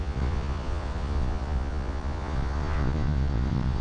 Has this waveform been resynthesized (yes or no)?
yes